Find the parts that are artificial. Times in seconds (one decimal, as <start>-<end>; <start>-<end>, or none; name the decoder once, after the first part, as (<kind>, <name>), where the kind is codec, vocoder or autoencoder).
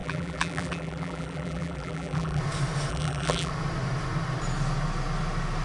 0.0-2.4 (vocoder, BigVGAN v2); 2.9-3.5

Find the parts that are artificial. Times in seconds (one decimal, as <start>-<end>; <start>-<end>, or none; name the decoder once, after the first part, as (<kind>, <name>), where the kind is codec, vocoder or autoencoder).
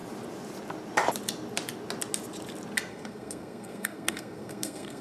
2.9-5.0 (codec, SNAC)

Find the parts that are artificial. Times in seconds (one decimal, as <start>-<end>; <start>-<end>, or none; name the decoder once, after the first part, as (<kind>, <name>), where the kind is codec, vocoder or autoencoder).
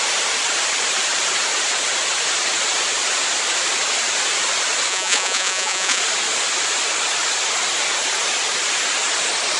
4.9-6.0 (vocoder, Vocos)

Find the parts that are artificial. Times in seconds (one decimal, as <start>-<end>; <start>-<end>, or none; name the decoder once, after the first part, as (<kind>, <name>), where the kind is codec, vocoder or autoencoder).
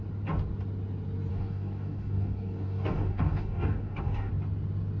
1.3-4.3 (codec, DAC)